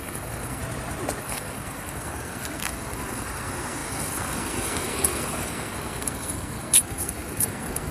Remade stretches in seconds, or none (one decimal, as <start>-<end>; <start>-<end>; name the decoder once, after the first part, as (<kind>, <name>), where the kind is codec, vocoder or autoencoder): 0.0-0.6 (codec, SNAC); 1.2-7.9

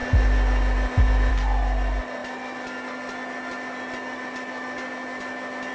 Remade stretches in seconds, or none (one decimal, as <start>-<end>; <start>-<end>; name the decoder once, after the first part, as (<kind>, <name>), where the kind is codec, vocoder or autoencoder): none